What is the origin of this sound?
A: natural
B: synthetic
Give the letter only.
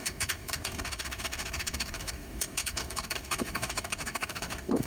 B